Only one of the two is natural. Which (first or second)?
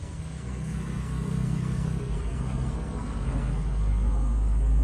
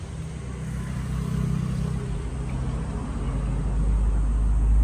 second